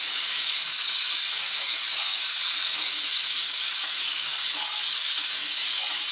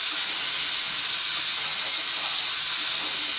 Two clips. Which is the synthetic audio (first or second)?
first